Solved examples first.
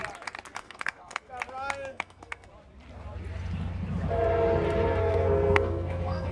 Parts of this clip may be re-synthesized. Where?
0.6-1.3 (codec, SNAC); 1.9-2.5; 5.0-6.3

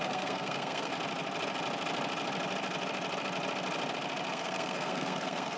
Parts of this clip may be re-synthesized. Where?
0.0-0.9 (codec, SNAC); 4.3-5.6

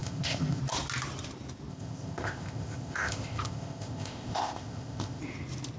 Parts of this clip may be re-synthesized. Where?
0.0-0.6 (codec, ZipCodec); 1.7-5.2

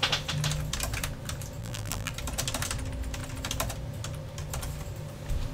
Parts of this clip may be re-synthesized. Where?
1.6-2.1 (vocoder, BigVGAN v2)

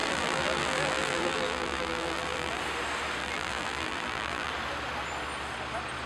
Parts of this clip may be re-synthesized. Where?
0.0-2.6 (vocoder, BigVGAN v2); 3.2-4.5

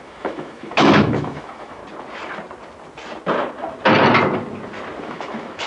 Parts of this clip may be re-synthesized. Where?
0.0-1.8 (autoencoder, DAC-VAE); 5.0-5.7

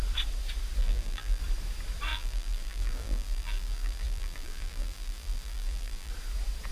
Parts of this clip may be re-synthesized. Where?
0.8-1.4 (vocoder, BigVGAN v2); 2.1-6.1

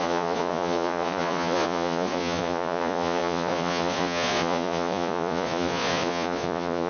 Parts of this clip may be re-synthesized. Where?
0.0-6.9 (vocoder, Vocos)